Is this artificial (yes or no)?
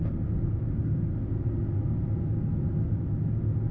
no